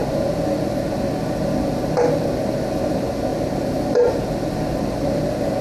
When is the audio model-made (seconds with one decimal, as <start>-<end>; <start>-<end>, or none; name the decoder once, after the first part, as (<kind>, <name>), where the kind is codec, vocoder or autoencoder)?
3.3-4.1 (vocoder, BigVGAN v2)